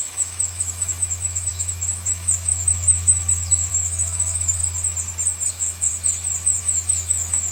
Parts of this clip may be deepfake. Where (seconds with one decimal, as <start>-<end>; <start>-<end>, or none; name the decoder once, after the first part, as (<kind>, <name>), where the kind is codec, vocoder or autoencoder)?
0.0-4.6 (autoencoder, DAC-VAE); 5.5-5.9; 6.6-7.5